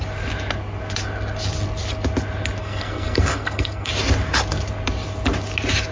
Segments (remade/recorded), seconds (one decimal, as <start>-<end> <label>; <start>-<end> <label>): 0.0-2.6 recorded; 2.6-3.9 remade; 3.9-5.9 recorded